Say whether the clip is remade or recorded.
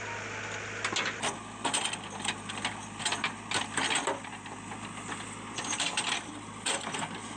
recorded